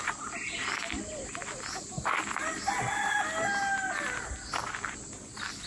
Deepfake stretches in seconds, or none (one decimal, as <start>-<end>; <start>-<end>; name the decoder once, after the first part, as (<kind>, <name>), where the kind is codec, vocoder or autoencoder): none

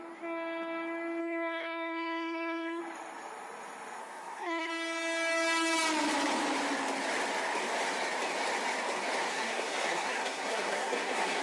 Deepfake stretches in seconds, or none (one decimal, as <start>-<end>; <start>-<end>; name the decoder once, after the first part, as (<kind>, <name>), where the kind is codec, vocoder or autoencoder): 1.2-2.8 (codec, SNAC); 4.0-4.7; 9.3-11.4

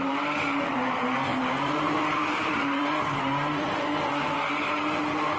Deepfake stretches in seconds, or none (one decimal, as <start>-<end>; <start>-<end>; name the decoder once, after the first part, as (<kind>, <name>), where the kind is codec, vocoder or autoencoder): 1.3-4.5 (vocoder, BigVGAN v2)